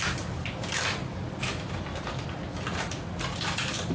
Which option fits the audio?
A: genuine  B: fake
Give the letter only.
A